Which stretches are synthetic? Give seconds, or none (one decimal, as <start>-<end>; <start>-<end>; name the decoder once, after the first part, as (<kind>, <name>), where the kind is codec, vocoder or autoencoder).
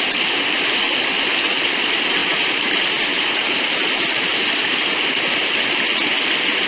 2.2-3.6 (vocoder, BigVGAN v2); 4.3-4.8